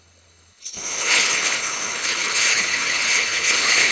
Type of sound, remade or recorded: remade